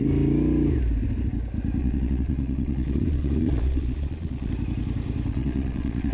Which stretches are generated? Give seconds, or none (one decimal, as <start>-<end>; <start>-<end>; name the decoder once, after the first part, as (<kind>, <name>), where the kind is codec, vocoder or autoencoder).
1.8-4.5 (vocoder, Vocos); 5.3-6.1

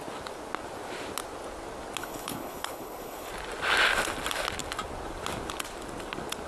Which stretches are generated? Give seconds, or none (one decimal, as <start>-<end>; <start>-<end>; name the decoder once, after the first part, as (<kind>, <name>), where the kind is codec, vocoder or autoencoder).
2.0-3.3 (codec, HILCodec)

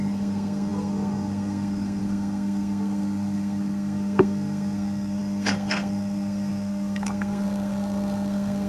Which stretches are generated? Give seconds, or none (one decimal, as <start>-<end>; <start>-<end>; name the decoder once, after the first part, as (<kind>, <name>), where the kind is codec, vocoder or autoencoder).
0.0-8.7 (codec, SNAC)